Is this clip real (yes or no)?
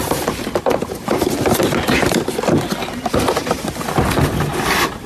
no